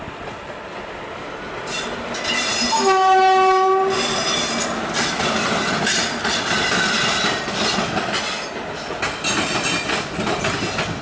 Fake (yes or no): no